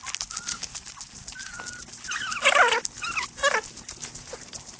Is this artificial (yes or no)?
no